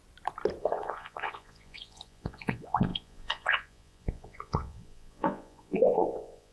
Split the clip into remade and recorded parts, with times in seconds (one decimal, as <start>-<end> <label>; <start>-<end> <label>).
0.0-0.6 recorded; 0.6-6.5 remade